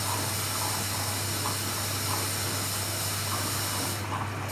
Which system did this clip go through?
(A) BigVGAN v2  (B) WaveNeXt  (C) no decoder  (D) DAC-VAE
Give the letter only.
C